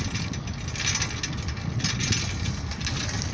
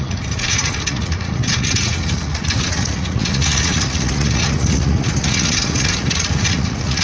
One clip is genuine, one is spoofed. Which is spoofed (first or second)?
second